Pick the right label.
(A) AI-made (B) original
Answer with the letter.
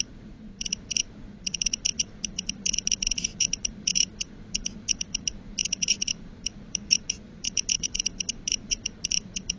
A